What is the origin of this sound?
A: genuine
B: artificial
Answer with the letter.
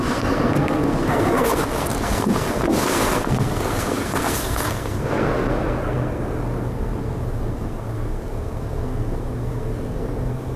B